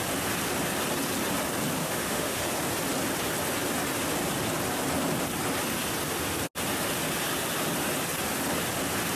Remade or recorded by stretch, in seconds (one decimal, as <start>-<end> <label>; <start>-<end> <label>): 0.0-1.8 recorded; 1.8-2.4 remade; 2.4-9.2 recorded